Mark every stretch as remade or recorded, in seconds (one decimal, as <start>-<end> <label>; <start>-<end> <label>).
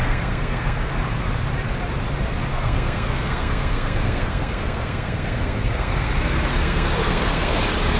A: 0.0-0.9 remade; 0.9-2.5 recorded; 2.5-6.1 remade; 6.1-6.5 recorded; 6.5-7.6 remade; 7.6-8.0 recorded